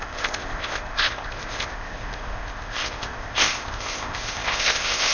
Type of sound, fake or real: fake